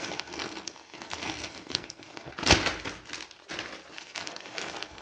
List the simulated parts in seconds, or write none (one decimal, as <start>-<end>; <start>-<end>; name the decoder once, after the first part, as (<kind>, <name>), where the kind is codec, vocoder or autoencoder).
0.0-2.3 (codec, SNAC); 3.9-5.0